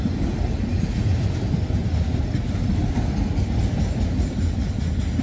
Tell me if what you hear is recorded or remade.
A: recorded